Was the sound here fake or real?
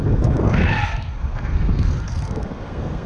fake